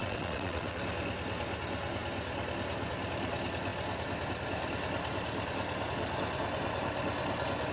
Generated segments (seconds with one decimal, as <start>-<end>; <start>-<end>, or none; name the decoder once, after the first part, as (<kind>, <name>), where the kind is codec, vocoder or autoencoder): 0.0-0.8 (vocoder, WaveNeXt)